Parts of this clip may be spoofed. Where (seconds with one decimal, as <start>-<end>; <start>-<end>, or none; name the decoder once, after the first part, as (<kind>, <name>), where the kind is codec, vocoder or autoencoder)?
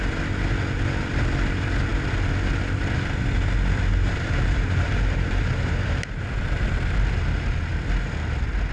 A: 3.9-6.2 (vocoder, BigVGAN v2)